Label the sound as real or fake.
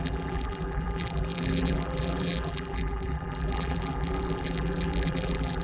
fake